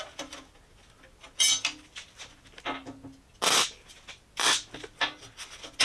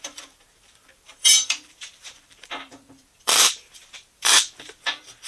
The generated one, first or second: second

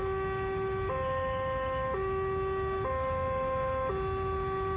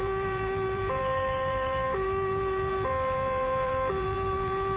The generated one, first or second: second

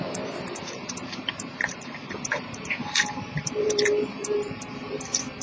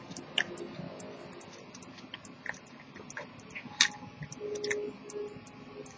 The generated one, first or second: first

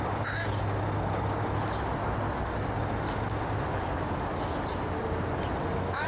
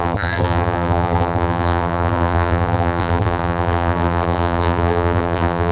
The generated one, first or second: second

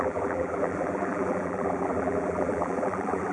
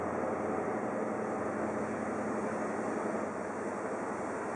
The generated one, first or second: first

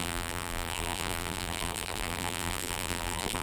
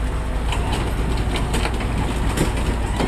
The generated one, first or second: first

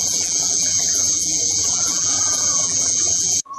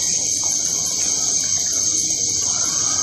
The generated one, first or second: first